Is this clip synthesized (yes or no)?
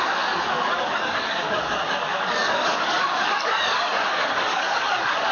yes